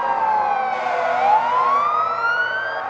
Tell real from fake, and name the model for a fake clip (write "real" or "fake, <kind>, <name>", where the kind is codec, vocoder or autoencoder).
real